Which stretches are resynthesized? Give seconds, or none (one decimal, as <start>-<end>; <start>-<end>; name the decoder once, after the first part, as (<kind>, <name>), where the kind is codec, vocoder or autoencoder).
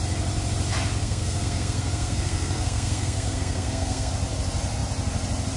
1.0-4.1 (codec, SNAC)